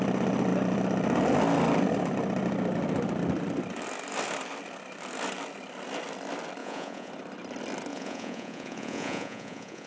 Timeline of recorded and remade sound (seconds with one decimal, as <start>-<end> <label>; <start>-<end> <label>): 0.0-6.6 recorded; 6.6-7.1 remade; 7.1-7.9 recorded; 7.9-9.9 remade